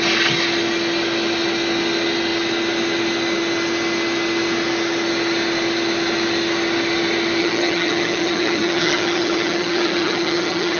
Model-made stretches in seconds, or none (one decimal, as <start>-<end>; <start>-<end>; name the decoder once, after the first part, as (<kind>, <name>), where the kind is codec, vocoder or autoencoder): 7.4-10.8 (vocoder, HiFi-GAN)